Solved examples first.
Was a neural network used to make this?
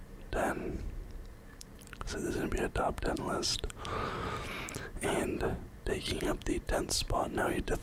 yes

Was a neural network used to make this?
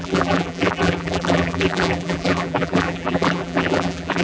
yes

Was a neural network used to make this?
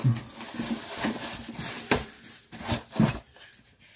no